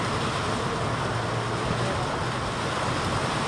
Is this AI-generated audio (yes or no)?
no